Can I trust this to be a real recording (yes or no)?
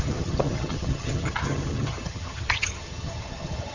no